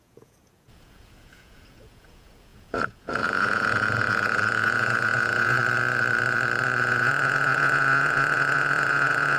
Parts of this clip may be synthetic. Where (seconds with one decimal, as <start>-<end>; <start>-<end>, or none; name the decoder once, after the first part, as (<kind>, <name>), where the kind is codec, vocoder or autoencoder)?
0.0-5.6 (vocoder, Vocos); 6.8-9.4

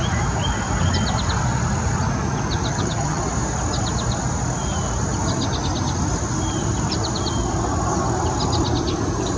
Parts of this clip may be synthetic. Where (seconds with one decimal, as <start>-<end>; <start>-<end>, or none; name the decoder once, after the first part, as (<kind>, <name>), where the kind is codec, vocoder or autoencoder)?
2.7-3.2 (vocoder, HiFi-GAN)

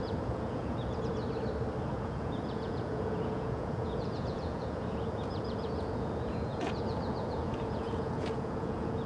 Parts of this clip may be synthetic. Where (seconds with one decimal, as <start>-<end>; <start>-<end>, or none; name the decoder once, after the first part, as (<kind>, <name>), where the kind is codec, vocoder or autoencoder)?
0.0-1.1 (vocoder, Vocos); 1.9-9.1

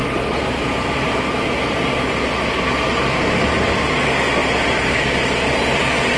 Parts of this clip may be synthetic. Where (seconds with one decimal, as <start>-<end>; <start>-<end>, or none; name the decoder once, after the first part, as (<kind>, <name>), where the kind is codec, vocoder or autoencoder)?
0.0-3.7 (vocoder, BigVGAN v2); 4.4-5.1